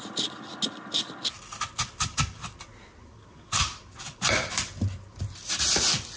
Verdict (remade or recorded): recorded